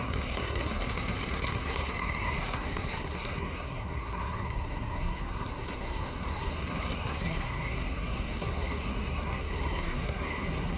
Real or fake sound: fake